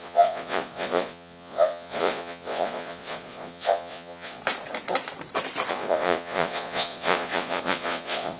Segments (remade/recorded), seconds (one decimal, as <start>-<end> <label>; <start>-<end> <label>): 0.0-4.4 remade; 4.4-5.7 recorded; 5.7-8.4 remade